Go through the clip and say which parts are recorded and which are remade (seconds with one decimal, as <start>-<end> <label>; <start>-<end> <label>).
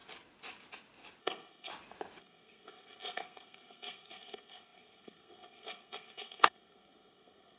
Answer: 0.0-1.2 recorded; 1.2-1.7 remade; 1.7-2.2 recorded; 2.2-7.6 remade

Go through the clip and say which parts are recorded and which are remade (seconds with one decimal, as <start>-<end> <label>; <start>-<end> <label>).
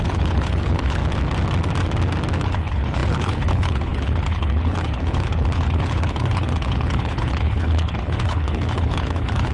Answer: 0.0-1.0 remade; 1.0-2.4 recorded; 2.4-9.5 remade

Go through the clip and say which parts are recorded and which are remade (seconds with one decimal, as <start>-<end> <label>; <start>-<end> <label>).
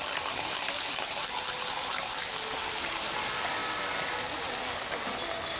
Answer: 0.0-5.6 recorded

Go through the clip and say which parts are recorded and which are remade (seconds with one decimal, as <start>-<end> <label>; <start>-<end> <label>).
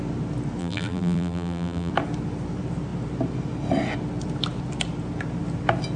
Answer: 0.0-0.6 recorded; 0.6-1.9 remade; 1.9-6.0 recorded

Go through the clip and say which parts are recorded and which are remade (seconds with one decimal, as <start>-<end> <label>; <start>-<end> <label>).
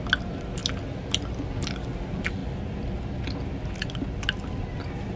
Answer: 0.0-5.2 recorded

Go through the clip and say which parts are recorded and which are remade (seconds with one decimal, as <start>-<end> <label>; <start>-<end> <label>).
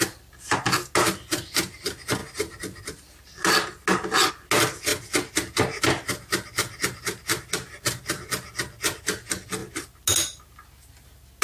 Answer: 0.0-11.4 recorded